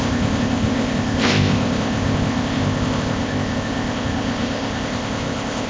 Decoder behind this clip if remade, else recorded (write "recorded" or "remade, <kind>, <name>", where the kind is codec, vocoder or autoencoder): remade, codec, ZipCodec